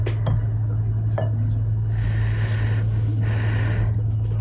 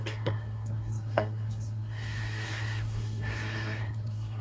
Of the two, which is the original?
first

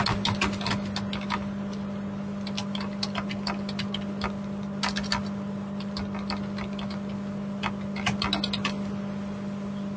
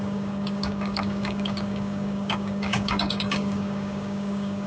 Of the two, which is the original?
first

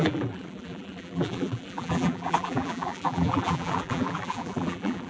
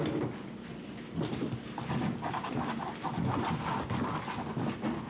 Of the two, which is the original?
second